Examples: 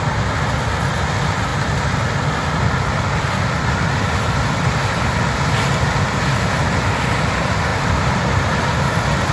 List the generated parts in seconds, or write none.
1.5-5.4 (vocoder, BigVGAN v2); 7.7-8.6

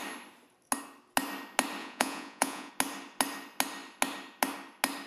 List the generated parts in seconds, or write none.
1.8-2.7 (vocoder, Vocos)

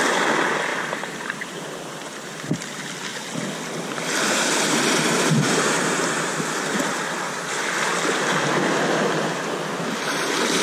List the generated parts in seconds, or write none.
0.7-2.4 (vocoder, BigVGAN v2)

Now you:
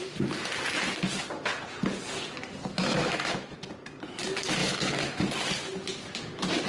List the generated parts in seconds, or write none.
2.8-3.7 (autoencoder, DAC-VAE); 4.6-5.2